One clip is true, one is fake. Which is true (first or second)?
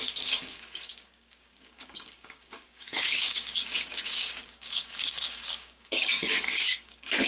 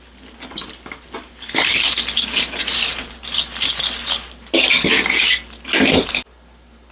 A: second